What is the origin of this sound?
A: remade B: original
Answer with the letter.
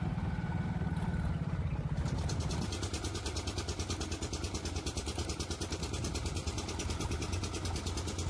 B